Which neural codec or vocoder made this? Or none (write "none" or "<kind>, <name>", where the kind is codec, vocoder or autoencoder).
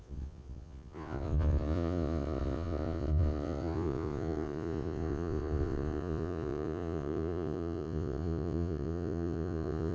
vocoder, Vocos